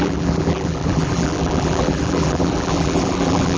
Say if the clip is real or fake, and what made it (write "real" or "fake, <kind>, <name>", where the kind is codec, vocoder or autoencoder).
fake, vocoder, BigVGAN v2